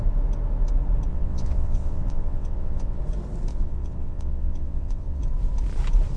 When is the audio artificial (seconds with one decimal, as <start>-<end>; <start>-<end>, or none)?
1.1-3.0; 3.5-5.2